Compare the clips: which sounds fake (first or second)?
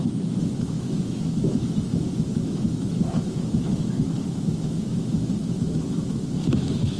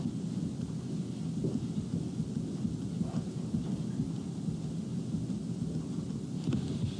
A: first